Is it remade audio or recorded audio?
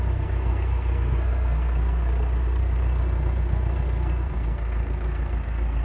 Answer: remade